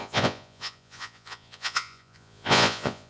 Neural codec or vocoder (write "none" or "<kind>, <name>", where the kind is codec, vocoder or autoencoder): vocoder, Vocos